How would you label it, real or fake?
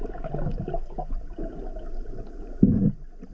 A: real